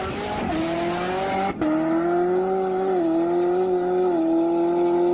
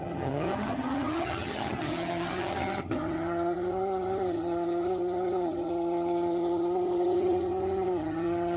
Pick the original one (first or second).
first